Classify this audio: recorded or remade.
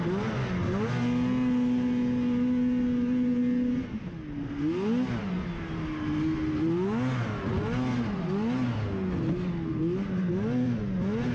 recorded